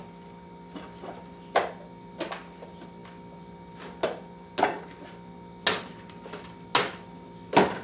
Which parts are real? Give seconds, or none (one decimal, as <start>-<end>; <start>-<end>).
0.0-7.8